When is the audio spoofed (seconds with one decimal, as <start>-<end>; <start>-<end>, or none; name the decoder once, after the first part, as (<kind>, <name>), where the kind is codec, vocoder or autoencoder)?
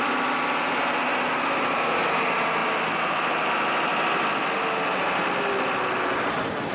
none